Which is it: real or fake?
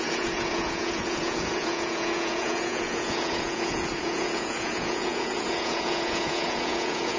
fake